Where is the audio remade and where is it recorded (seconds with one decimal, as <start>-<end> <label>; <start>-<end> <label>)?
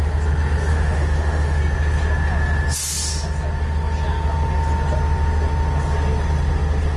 0.0-0.7 recorded; 0.7-1.6 remade; 1.6-7.0 recorded